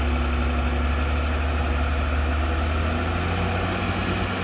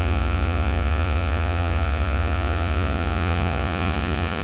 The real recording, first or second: first